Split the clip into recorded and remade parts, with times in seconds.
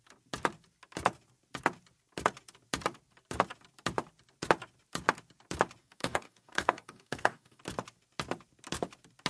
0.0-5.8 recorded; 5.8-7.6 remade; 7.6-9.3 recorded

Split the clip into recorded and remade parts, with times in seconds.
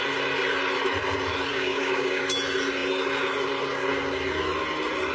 0.0-1.5 recorded; 1.5-2.2 remade; 2.2-5.1 recorded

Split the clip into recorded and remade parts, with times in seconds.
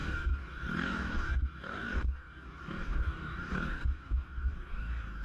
0.0-5.2 remade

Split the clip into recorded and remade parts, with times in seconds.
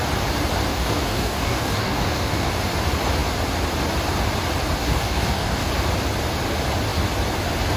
0.0-0.7 recorded; 0.7-2.5 remade; 2.5-4.8 recorded; 4.8-5.7 remade; 5.7-7.8 recorded